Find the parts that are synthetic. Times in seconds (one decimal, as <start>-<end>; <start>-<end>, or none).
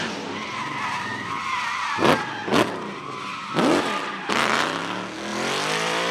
5.3-6.1